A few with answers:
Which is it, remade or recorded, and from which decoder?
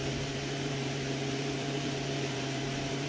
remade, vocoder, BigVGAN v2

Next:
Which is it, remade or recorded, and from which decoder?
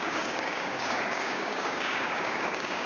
remade, codec, DAC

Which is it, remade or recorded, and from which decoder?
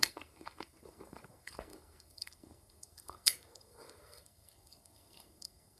remade, codec, SNAC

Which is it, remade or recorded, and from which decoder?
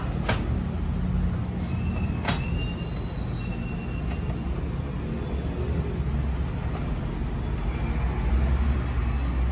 recorded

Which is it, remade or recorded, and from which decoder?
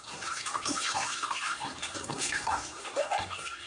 remade, codec, SNAC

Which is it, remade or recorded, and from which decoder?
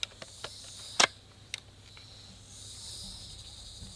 recorded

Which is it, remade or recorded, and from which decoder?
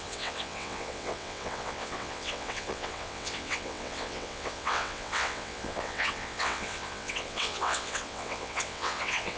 remade, vocoder, WaveNeXt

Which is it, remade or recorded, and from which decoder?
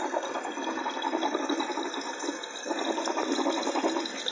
recorded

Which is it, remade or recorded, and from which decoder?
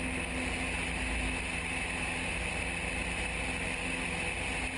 recorded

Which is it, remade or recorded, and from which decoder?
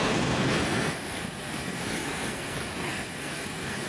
remade, codec, SNAC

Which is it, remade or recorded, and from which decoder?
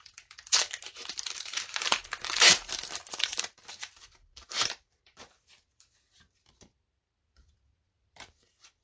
remade, vocoder, BigVGAN v2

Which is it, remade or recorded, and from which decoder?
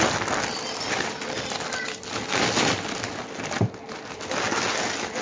recorded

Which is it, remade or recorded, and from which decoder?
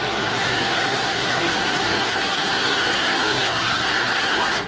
remade, codec, SNAC